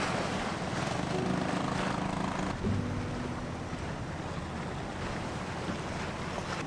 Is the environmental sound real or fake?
real